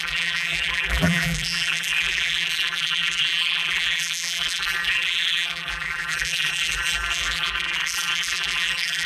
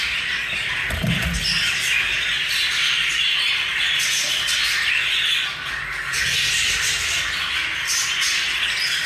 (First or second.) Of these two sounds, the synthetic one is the first